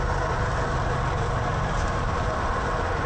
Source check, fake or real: fake